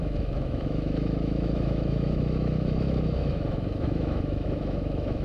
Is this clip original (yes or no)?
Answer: no